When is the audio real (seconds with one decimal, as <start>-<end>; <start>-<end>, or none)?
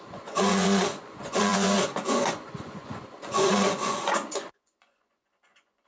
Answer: none